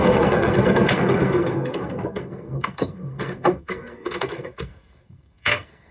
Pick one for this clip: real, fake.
fake